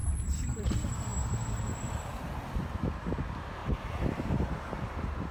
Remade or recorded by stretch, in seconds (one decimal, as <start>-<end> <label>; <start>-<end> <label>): 0.0-0.7 remade; 0.7-3.6 recorded; 3.6-5.3 remade